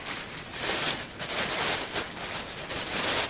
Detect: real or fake real